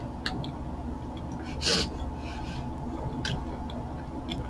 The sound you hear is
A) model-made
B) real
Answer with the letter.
B